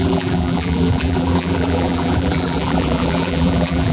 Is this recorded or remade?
remade